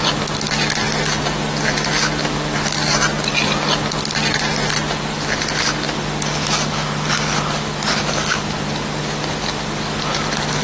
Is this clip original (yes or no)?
yes